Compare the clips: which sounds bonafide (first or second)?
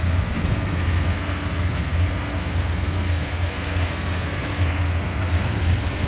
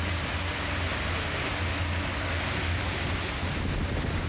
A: second